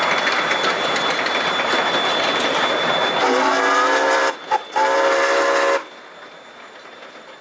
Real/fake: real